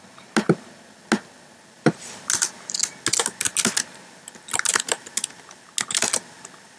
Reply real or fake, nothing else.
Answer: real